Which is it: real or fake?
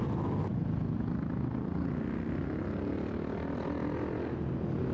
real